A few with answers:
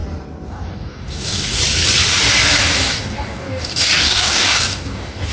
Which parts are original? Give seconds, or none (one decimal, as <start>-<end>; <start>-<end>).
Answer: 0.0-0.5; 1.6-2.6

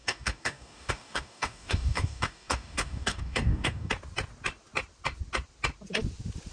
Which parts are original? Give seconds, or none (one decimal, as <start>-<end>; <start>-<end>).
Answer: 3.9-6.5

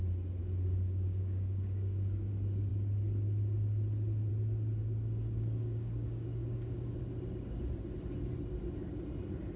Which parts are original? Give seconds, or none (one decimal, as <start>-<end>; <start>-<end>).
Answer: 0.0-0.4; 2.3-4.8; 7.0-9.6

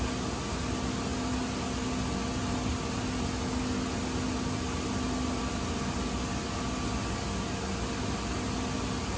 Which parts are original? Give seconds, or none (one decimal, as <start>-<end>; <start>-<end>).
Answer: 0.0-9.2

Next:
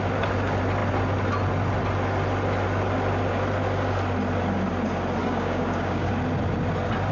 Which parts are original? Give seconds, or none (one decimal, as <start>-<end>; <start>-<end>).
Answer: 0.0-5.2; 6.1-7.1

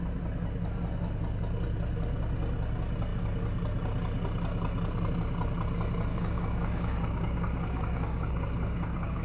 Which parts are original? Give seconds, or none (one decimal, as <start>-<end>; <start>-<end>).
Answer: 0.0-6.1